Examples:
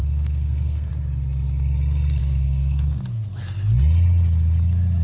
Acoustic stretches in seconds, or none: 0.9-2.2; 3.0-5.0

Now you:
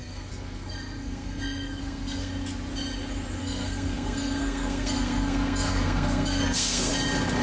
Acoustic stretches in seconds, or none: 2.3-3.4; 6.9-7.4

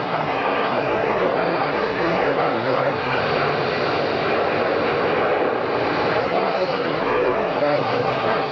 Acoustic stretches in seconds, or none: 3.2-6.2

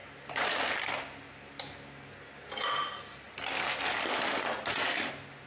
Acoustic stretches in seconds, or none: 0.0-5.5